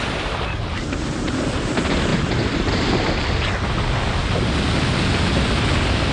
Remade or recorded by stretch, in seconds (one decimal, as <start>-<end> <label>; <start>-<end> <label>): 0.0-6.1 recorded